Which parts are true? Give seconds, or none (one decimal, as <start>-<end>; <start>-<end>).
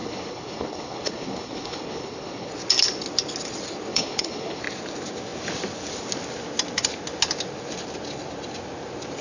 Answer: 2.5-3.9; 4.6-9.2